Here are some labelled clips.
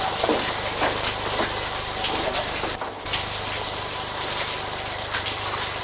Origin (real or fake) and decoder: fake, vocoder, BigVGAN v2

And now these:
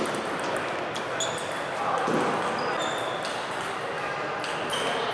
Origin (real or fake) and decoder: real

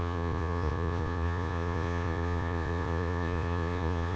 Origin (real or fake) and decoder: fake, vocoder, Vocos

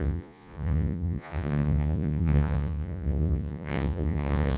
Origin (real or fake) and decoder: fake, vocoder, Vocos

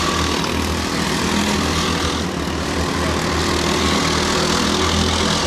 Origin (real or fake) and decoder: real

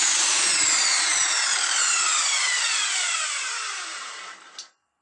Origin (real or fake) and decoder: fake, vocoder, BigVGAN v2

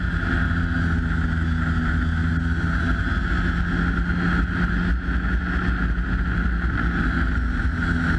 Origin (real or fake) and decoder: real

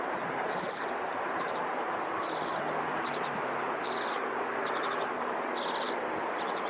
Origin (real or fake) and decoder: fake, vocoder, BigVGAN v2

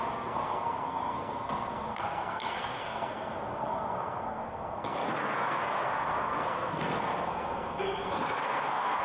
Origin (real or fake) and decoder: fake, codec, SNAC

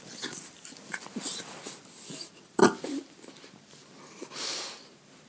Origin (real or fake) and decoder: real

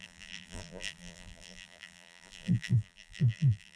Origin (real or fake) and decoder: fake, vocoder, BigVGAN v2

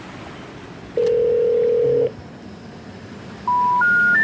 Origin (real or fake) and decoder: real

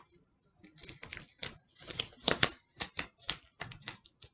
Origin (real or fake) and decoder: fake, vocoder, BigVGAN v2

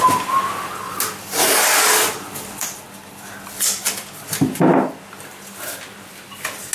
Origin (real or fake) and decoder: real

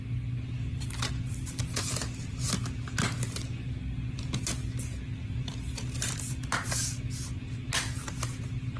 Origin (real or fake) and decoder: real